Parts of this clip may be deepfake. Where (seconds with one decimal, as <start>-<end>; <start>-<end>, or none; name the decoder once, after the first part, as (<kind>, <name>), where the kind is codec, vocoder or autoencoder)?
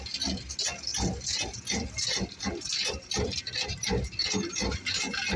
4.5-5.0 (vocoder, BigVGAN v2)